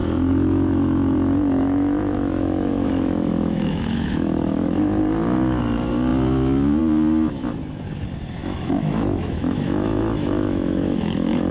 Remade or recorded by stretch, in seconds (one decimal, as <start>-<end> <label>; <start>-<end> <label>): 0.0-5.0 remade; 5.0-8.4 recorded; 8.4-11.5 remade